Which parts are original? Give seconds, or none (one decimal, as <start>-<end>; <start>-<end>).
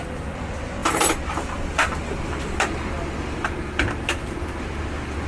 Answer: 0.0-5.3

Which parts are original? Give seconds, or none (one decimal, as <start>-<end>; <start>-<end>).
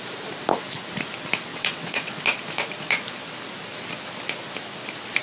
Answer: 0.0-1.5; 2.2-5.2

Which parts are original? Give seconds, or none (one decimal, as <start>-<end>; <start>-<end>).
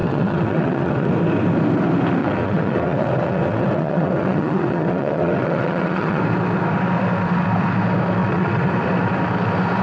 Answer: 1.1-2.2; 6.2-8.2; 8.7-9.8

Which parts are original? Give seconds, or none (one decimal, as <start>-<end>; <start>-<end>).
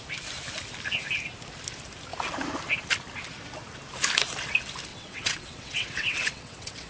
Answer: 0.0-4.9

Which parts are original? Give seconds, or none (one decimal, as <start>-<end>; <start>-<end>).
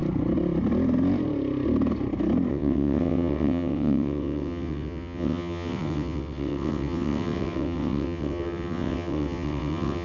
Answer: 0.0-2.5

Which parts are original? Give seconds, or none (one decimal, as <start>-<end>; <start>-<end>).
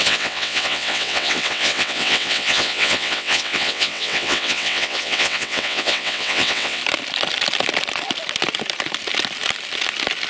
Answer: 6.8-10.3